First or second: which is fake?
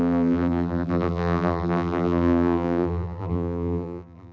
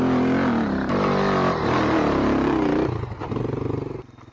first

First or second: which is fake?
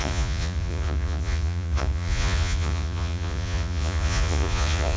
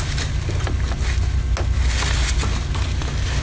first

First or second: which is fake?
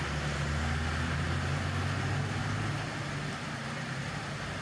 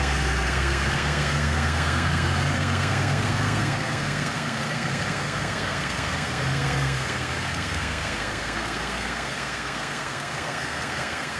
second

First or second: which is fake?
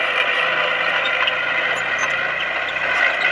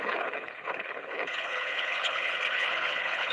second